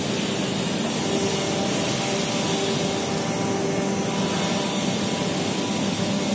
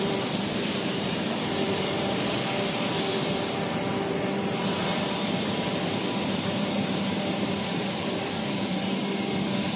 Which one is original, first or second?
first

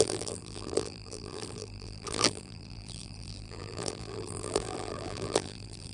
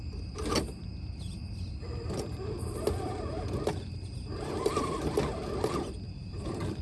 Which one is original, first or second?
second